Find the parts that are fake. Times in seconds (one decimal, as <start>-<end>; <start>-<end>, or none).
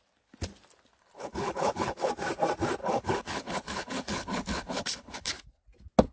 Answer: 1.0-2.1; 2.8-5.3